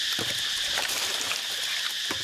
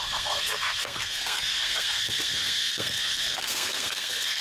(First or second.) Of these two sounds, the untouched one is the first